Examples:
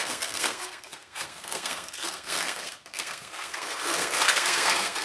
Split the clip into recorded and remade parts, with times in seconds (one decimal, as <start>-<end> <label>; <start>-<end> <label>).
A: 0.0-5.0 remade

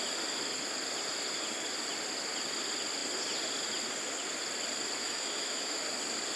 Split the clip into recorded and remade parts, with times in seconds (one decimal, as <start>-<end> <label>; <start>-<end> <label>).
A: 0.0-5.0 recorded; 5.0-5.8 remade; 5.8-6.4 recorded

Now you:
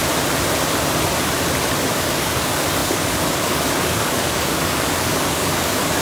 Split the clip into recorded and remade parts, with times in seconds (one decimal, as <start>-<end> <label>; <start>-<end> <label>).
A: 0.0-1.9 recorded; 1.9-6.0 remade